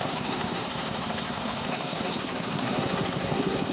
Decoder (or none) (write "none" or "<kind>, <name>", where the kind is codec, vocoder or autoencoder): codec, SNAC